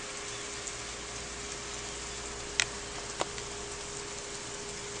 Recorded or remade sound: recorded